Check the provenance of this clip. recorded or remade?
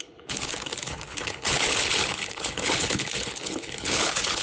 remade